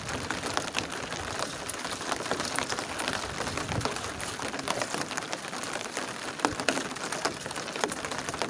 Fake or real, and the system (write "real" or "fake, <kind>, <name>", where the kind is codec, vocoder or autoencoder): real